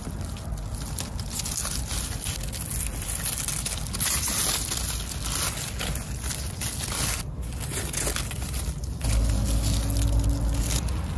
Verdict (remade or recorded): recorded